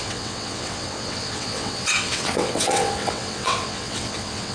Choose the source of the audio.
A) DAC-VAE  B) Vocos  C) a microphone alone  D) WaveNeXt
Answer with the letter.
D